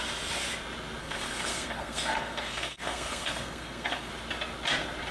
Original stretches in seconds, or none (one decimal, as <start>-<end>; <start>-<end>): 0.0-1.0; 4.1-5.1